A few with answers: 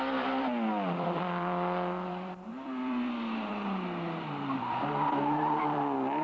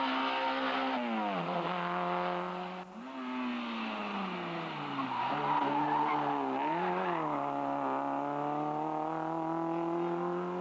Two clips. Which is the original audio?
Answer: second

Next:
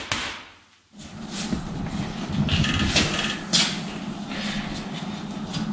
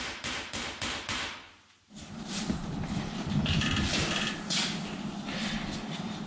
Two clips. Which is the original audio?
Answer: first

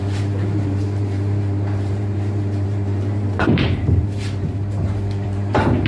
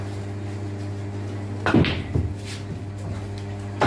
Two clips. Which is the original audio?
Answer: second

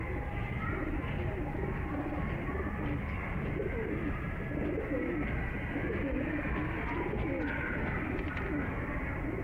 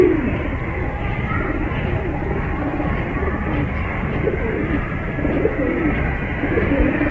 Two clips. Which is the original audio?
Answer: first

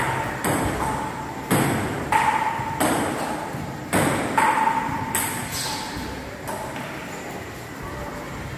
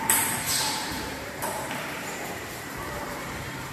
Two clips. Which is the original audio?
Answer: first